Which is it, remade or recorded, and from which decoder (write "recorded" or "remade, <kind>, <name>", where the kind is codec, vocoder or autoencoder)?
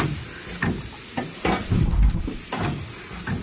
recorded